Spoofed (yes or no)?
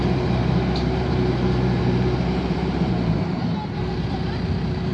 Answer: yes